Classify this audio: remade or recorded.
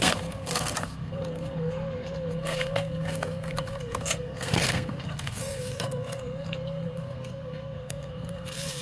remade